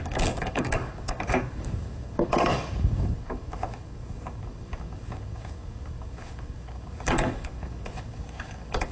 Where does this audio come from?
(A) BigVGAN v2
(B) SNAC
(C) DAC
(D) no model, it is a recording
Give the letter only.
C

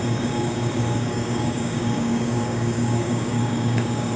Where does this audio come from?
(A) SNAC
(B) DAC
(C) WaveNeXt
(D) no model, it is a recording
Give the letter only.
B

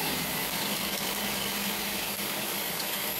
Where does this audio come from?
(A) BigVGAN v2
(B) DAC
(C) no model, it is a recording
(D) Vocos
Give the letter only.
B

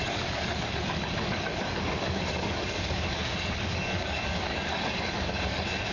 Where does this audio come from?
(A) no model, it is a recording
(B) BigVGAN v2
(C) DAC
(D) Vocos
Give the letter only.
C